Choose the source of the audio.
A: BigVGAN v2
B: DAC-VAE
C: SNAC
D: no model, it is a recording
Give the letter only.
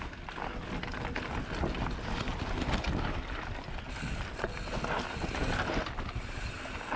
D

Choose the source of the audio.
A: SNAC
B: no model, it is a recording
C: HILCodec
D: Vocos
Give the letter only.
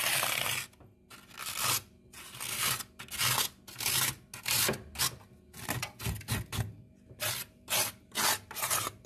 B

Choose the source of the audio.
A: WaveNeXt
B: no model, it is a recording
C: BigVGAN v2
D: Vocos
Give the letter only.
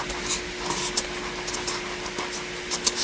B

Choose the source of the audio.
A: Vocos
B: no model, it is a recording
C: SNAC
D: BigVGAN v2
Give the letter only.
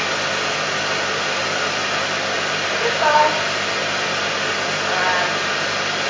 B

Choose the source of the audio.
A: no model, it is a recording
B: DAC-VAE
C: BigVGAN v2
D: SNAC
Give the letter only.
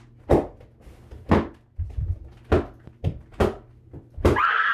A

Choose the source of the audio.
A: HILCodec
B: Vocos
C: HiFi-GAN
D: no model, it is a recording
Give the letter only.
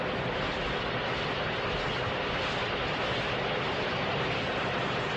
D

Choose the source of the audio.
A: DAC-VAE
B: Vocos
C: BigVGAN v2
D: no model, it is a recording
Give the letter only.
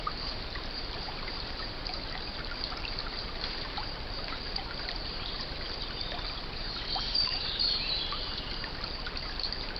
C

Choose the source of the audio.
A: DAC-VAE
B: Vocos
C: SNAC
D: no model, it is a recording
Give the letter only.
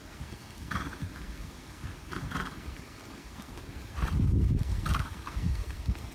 C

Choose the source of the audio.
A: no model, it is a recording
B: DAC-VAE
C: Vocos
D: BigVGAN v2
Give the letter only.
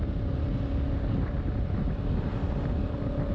A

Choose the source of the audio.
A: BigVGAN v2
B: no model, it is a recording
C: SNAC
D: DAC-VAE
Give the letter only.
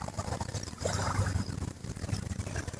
A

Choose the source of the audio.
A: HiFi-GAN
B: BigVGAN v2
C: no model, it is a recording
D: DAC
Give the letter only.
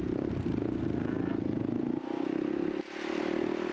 C